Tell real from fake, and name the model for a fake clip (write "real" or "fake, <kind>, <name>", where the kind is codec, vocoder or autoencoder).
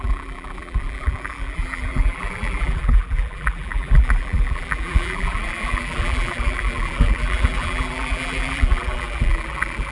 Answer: fake, vocoder, BigVGAN v2